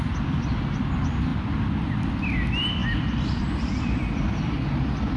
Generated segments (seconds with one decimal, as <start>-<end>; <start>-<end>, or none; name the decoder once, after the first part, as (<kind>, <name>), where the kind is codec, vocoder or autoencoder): none